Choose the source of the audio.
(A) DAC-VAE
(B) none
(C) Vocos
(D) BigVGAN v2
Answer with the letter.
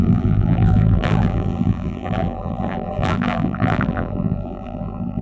D